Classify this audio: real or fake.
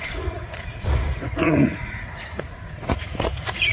fake